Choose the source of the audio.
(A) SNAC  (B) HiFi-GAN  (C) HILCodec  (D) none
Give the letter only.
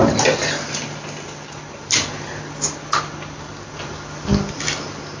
D